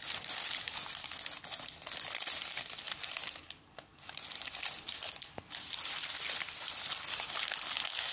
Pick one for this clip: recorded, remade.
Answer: recorded